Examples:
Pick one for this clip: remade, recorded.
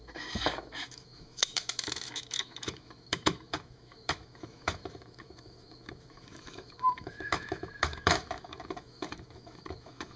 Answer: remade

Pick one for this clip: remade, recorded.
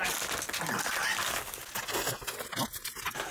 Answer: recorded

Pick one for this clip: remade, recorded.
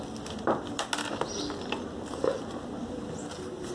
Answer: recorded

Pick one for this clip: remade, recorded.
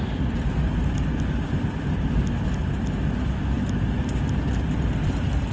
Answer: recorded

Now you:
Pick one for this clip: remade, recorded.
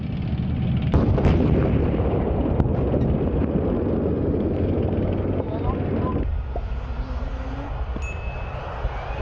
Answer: recorded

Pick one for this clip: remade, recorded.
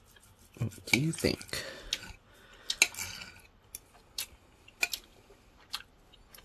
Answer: recorded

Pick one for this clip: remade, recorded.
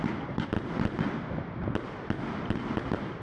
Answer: recorded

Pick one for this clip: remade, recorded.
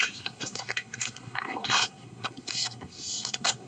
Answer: remade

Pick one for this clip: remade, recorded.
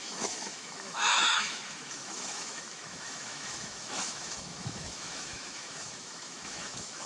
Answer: remade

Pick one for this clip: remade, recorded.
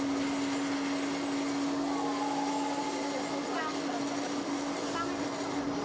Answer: recorded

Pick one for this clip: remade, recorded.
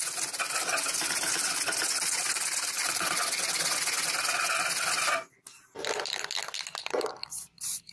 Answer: recorded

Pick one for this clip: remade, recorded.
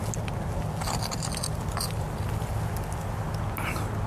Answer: recorded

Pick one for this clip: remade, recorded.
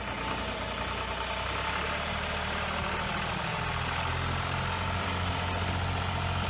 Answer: recorded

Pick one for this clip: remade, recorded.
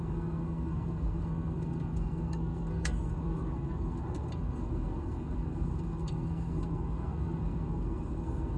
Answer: remade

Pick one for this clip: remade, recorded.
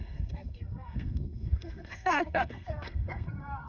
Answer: remade